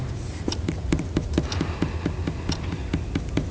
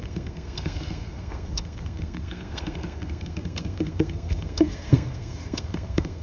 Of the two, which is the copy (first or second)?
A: second